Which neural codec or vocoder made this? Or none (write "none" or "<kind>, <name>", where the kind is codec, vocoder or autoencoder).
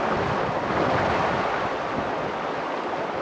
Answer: none